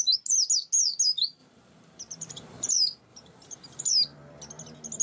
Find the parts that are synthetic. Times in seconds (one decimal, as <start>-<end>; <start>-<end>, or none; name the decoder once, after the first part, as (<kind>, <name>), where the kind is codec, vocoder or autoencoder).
1.4-2.7 (vocoder, BigVGAN v2); 3.1-3.9